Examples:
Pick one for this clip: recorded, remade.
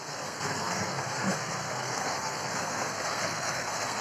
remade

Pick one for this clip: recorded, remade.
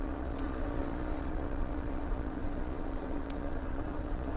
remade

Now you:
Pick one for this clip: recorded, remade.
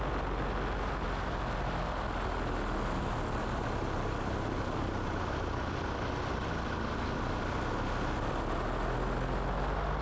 recorded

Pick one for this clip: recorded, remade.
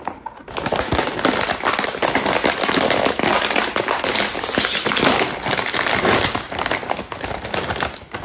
recorded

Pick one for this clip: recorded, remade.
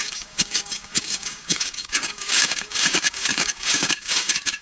remade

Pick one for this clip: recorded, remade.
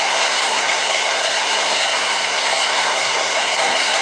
remade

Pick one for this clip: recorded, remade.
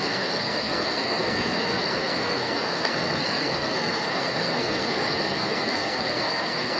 remade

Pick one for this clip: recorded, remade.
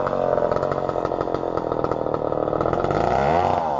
recorded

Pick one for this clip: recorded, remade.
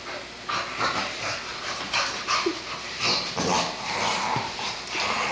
remade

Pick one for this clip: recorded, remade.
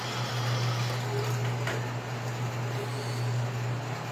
recorded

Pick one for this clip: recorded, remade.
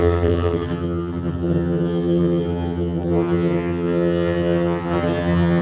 remade